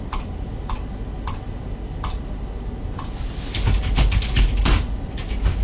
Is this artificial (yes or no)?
no